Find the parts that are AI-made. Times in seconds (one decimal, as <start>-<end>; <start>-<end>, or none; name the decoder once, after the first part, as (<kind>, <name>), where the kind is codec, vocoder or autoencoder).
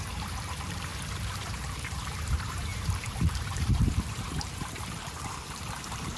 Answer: 0.0-0.9 (vocoder, BigVGAN v2); 1.5-6.2